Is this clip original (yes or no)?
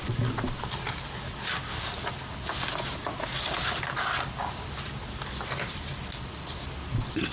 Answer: yes